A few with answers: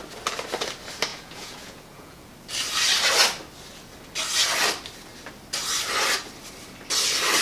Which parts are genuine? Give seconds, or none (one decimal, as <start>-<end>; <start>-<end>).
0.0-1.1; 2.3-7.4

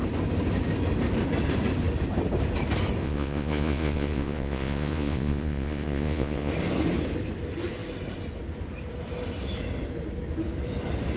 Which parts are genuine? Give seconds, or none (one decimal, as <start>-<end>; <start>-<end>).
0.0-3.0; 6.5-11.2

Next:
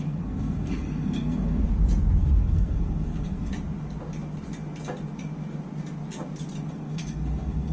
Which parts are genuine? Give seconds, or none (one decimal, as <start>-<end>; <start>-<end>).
1.6-2.2; 3.5-6.7

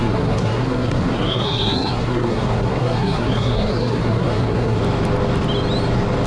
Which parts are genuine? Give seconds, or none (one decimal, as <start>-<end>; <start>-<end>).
4.8-6.3